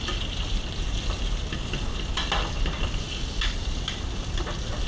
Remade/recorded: recorded